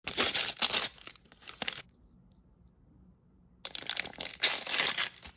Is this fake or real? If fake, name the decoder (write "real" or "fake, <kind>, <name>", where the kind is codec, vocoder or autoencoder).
real